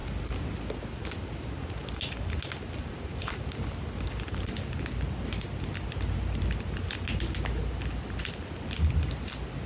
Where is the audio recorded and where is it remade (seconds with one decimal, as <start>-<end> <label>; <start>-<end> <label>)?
0.0-9.7 recorded